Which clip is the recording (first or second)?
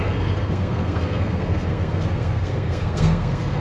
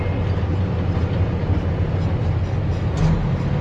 second